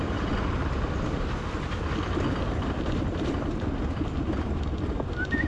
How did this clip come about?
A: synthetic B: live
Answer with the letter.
B